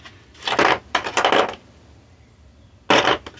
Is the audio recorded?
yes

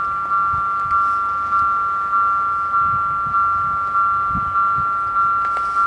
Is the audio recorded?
yes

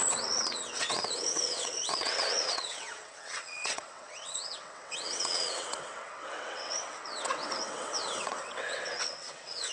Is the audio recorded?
no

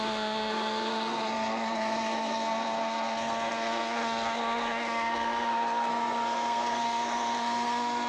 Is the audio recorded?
no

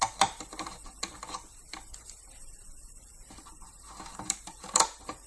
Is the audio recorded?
no